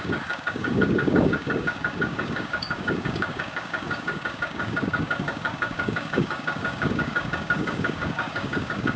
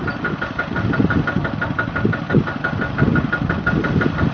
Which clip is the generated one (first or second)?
first